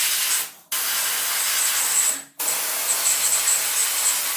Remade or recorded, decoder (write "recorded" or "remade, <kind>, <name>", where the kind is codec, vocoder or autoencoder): recorded